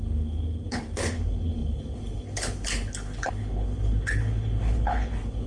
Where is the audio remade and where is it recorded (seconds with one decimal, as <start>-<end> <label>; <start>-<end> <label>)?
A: 0.0-5.5 remade